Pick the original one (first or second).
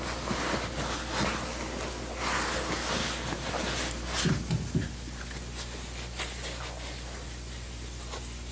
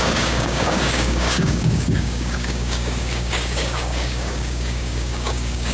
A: first